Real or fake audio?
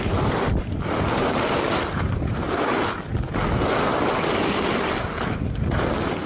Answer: real